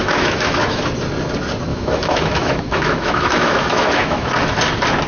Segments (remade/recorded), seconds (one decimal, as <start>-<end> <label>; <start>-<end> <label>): 0.0-0.8 remade; 0.8-1.7 recorded; 1.7-4.3 remade; 4.3-5.1 recorded